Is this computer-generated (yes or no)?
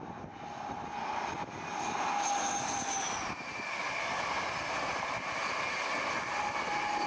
no